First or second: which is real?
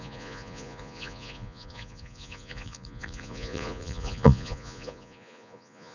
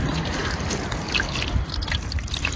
second